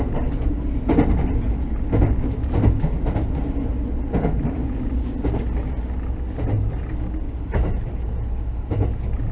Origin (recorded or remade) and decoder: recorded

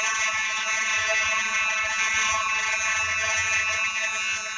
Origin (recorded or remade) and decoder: remade, vocoder, Vocos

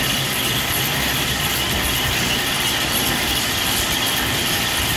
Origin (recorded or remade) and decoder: remade, vocoder, BigVGAN v2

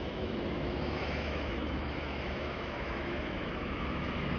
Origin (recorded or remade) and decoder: remade, autoencoder, DAC-VAE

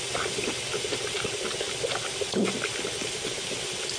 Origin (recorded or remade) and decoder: recorded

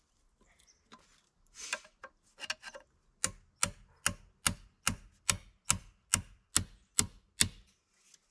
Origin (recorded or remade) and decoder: recorded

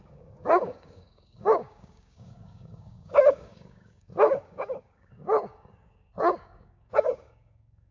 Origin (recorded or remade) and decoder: remade, codec, DAC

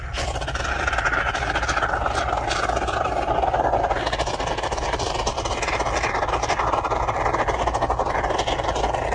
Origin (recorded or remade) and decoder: recorded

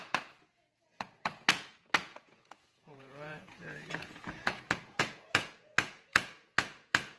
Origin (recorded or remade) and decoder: remade, vocoder, Vocos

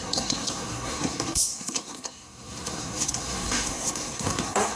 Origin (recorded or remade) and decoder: remade, codec, SNAC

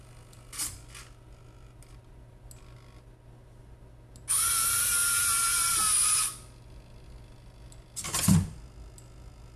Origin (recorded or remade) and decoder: recorded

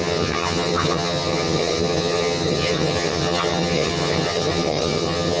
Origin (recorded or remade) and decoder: remade, vocoder, HiFi-GAN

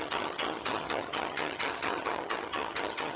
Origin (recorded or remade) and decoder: remade, vocoder, HiFi-GAN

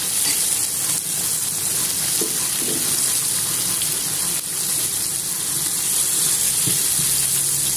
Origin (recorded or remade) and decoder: recorded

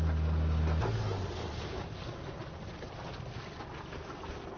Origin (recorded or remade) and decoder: recorded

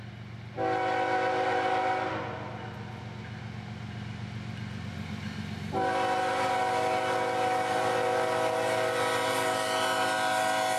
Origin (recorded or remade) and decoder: recorded